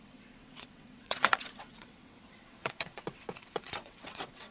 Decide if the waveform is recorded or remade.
remade